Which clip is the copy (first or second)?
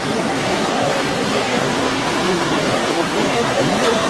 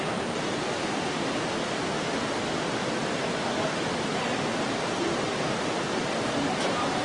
first